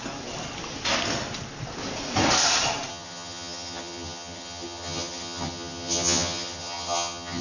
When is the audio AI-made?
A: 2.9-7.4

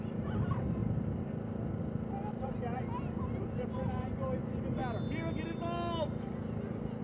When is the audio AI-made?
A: 0.0-0.8; 2.3-4.8

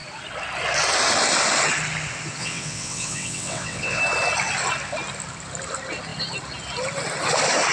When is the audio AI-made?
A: 2.4-4.0

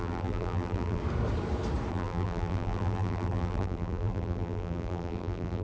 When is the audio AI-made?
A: 0.0-1.0; 1.9-5.6

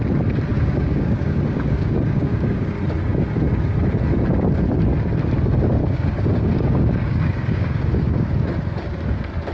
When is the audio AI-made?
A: 0.5-2.7; 5.8-8.3

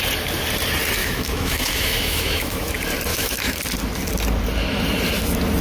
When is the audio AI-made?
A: 1.0-2.7; 3.1-3.6

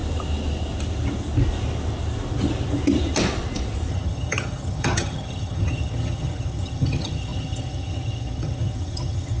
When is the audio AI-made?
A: 3.9-9.4

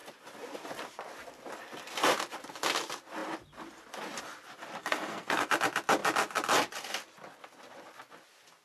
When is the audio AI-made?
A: 4.8-5.5